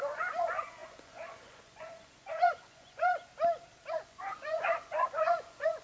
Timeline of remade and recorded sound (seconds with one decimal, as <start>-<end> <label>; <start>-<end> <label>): 0.0-3.3 remade; 3.3-3.9 recorded; 3.9-5.8 remade